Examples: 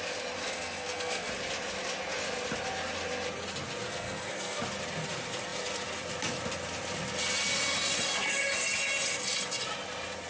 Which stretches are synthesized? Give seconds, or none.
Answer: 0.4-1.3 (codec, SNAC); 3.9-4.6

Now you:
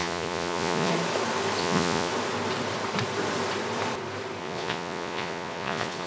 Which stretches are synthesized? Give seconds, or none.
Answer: 0.0-0.9 (vocoder, Vocos); 1.6-2.1; 4.4-6.1

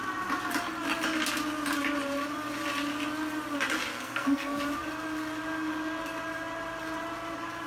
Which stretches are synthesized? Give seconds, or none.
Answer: 3.9-4.6 (codec, SNAC)

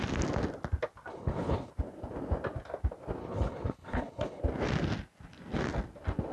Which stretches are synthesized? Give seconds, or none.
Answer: 1.1-1.7 (codec, HILCodec); 3.2-4.4